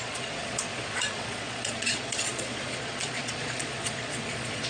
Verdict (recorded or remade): remade